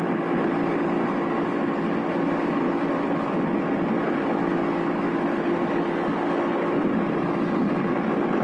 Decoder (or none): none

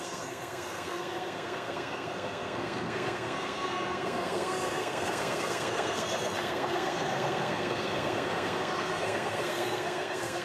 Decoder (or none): codec, SNAC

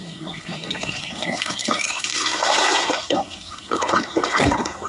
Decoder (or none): codec, SNAC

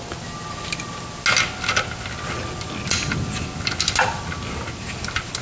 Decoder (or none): none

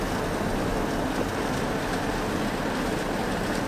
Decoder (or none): none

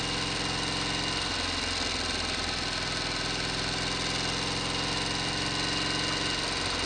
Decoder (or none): none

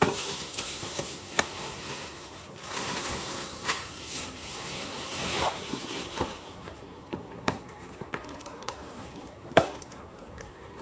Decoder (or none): codec, SNAC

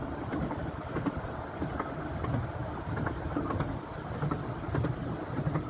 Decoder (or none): none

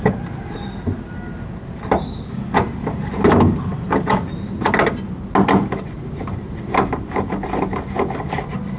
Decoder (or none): none